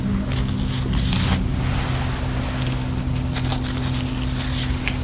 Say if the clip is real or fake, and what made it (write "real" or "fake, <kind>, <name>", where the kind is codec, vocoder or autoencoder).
real